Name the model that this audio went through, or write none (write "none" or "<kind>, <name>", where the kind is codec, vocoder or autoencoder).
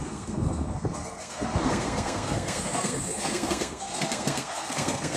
codec, SNAC